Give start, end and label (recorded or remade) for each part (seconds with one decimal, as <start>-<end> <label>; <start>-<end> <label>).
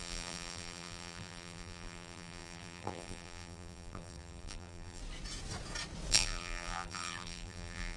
0.0-5.0 remade; 5.0-6.1 recorded; 6.1-8.0 remade